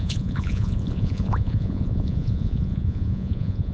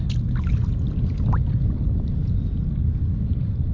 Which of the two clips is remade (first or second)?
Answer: first